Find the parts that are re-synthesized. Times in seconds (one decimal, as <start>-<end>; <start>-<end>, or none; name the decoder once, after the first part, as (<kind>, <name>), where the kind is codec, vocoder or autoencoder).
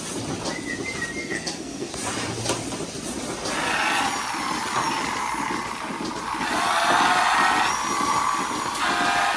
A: 1.2-1.9 (codec, SNAC)